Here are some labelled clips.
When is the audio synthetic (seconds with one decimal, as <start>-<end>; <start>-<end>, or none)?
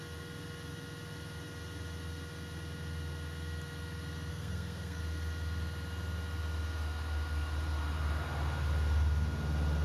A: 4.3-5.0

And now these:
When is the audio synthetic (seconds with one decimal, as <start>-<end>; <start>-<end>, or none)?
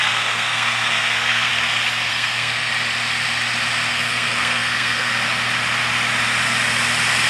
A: 0.0-1.5; 2.1-2.7; 3.9-5.1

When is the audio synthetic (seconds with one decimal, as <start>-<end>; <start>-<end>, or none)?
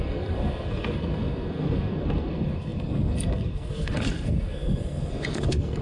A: 0.0-5.8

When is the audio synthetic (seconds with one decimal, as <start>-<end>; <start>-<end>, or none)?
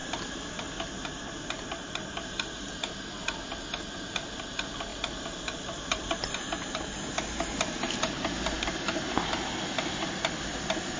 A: none